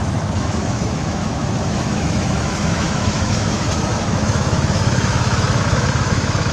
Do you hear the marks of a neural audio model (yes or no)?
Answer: yes